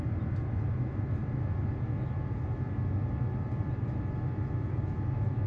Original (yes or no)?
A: yes